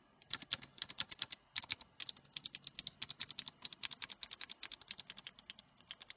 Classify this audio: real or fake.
real